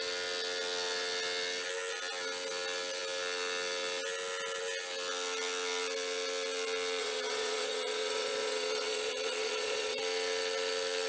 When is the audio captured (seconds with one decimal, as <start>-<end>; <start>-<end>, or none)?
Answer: 0.0-7.0; 10.0-11.1